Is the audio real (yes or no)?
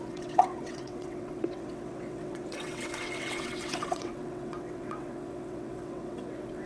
no